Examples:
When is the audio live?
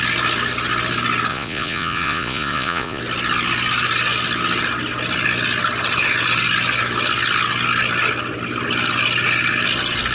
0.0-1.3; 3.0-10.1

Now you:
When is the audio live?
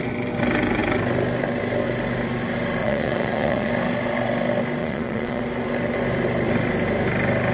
0.0-2.8; 3.7-4.8; 5.4-7.5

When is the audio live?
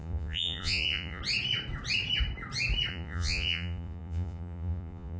1.2-2.9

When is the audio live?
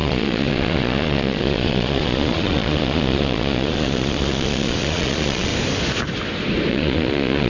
5.5-6.7